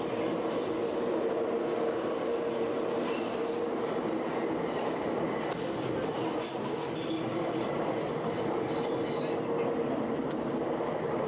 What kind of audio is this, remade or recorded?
recorded